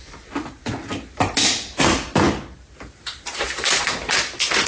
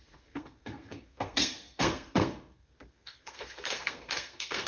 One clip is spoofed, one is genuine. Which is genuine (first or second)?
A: first